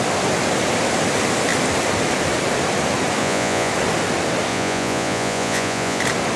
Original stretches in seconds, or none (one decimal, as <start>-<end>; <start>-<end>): 0.0-3.2; 3.7-4.5; 6.0-6.4